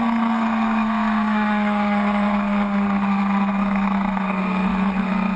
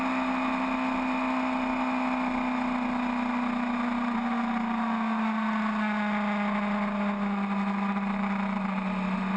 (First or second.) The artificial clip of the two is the first